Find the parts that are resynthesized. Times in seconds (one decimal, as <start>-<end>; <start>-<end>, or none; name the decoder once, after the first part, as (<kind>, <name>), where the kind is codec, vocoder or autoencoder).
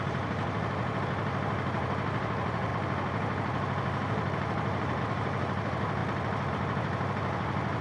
0.0-6.0 (vocoder, BigVGAN v2); 6.5-7.8